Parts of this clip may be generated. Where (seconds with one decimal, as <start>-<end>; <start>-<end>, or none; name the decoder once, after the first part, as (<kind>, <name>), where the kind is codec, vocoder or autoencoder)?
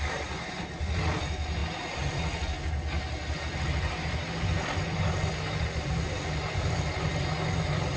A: none